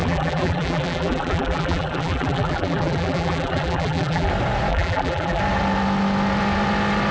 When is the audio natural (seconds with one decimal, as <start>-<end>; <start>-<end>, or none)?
4.3-4.7; 5.4-7.1